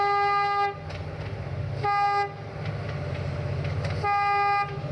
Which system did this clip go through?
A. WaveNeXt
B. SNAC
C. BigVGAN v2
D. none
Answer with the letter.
D